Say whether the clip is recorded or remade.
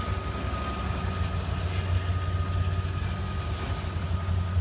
recorded